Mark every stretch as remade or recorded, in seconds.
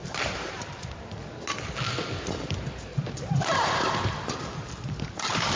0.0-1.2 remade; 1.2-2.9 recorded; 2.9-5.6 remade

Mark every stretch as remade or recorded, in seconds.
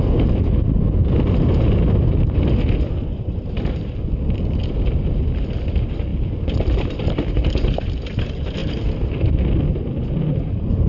0.0-10.9 recorded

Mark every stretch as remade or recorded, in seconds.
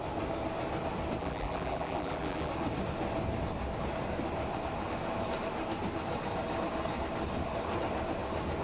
0.0-1.2 recorded; 1.2-2.5 remade; 2.5-8.6 recorded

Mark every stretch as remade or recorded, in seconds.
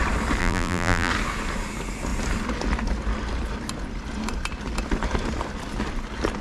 0.0-0.4 recorded; 0.4-1.1 remade; 1.1-6.4 recorded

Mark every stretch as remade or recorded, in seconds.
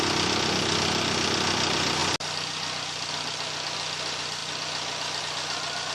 0.0-5.9 recorded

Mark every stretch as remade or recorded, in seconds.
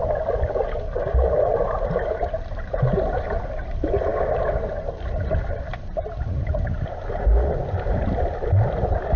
0.0-1.5 recorded; 1.5-3.4 remade; 3.4-9.2 recorded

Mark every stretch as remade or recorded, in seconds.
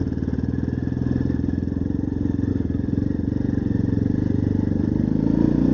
0.0-2.5 recorded; 2.5-5.7 remade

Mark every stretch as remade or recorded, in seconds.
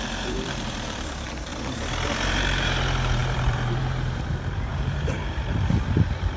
0.0-1.5 remade; 1.5-2.3 recorded; 2.3-6.4 remade